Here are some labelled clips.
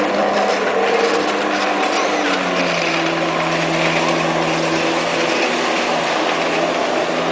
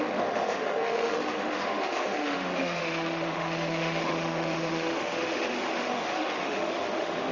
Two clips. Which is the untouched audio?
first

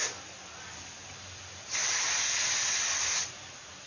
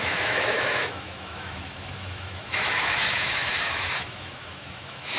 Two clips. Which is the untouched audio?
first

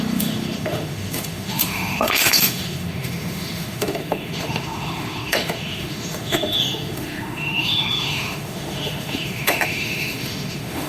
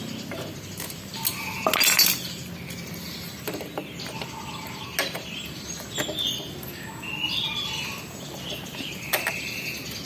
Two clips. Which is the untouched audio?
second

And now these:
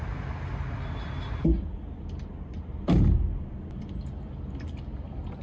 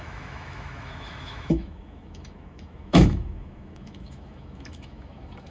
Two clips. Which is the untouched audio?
first